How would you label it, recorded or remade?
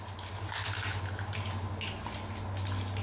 recorded